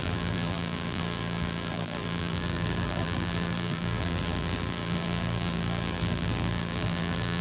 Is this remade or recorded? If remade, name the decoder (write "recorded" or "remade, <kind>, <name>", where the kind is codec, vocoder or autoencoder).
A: remade, vocoder, BigVGAN v2